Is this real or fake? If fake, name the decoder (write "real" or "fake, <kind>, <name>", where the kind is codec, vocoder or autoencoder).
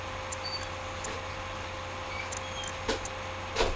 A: real